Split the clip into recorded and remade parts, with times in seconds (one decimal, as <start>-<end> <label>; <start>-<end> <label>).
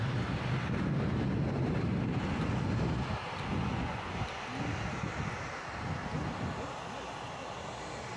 0.0-3.5 recorded; 3.5-4.2 remade; 4.2-8.2 recorded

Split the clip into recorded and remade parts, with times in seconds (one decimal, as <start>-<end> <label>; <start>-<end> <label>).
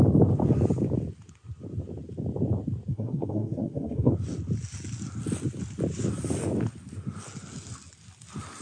0.0-2.9 recorded; 2.9-4.1 remade; 4.1-8.6 recorded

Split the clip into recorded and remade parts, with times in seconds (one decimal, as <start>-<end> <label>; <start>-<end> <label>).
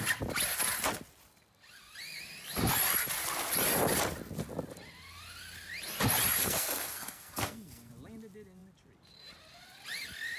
0.0-6.4 recorded; 6.4-7.9 remade; 7.9-10.4 recorded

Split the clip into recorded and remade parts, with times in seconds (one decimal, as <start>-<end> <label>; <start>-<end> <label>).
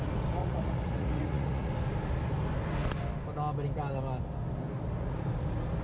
0.0-0.4 recorded; 0.4-1.7 remade; 1.7-5.8 recorded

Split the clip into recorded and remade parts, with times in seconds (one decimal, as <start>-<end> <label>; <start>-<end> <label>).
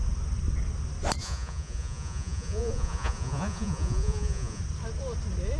0.0-1.2 recorded; 1.2-4.6 remade; 4.6-5.6 recorded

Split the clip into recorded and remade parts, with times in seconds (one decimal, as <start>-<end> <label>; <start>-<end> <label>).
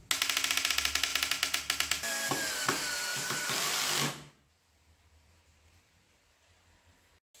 0.0-3.1 recorded; 3.1-7.0 remade; 7.0-7.4 recorded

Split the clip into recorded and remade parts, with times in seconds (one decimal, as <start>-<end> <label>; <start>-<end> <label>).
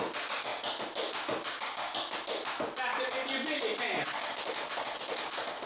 0.0-5.7 recorded